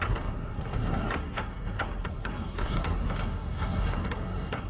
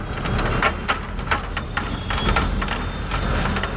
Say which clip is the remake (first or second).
first